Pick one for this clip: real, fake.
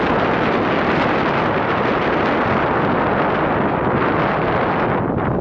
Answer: real